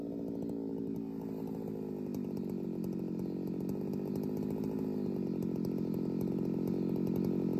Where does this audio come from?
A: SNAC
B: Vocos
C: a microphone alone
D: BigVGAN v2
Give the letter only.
C